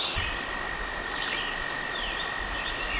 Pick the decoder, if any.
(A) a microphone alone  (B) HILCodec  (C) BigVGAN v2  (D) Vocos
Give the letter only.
A